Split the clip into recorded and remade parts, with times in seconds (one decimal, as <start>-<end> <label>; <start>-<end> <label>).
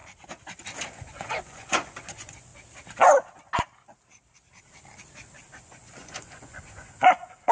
0.0-0.8 recorded; 0.8-2.5 remade; 2.5-5.6 recorded; 5.6-7.5 remade